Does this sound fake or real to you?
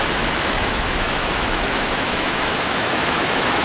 fake